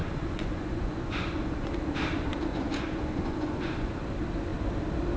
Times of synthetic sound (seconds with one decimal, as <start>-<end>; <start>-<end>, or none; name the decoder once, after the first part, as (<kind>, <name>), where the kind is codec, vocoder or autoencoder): 0.0-1.7 (vocoder, Vocos); 2.5-4.0

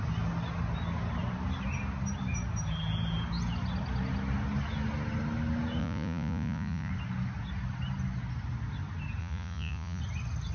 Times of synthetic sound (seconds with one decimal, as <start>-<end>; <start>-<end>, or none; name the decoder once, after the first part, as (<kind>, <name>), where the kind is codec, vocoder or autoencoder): 5.8-6.9 (vocoder, Vocos); 9.2-10.0